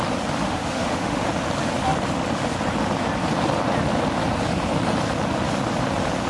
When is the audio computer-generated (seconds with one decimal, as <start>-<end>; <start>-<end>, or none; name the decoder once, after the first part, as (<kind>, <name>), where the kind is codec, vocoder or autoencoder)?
0.4-1.2 (autoencoder, DAC-VAE)